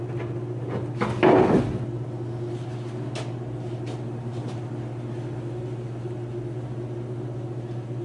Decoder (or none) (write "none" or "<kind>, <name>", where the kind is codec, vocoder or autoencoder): none